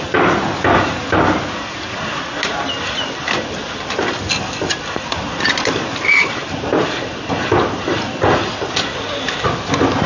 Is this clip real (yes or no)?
yes